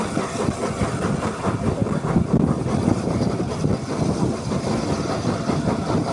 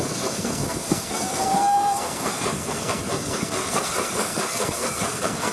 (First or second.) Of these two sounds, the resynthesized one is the second